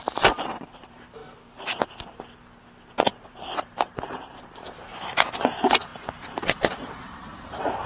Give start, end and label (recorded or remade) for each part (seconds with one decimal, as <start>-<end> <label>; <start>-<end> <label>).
0.0-1.2 remade; 1.2-3.3 recorded; 3.3-4.9 remade; 4.9-5.4 recorded; 5.4-5.9 remade; 5.9-6.4 recorded; 6.4-7.9 remade